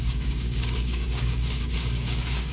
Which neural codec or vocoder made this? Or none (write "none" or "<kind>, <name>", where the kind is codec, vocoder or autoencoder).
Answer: codec, DAC